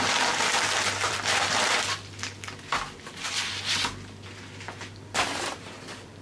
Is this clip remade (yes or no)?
yes